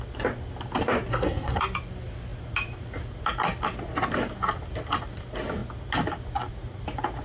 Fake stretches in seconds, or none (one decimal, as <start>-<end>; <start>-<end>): 1.1-1.6